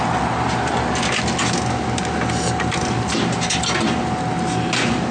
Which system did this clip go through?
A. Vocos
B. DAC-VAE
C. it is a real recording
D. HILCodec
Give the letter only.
C